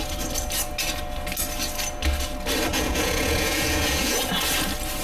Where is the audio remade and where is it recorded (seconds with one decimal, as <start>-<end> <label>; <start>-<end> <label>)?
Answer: 0.0-2.7 recorded; 2.7-4.3 remade; 4.3-5.0 recorded